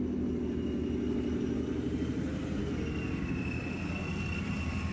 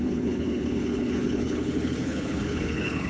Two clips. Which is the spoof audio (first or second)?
second